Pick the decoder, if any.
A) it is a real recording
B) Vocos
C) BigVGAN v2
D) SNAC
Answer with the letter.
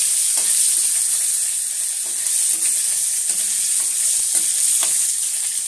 A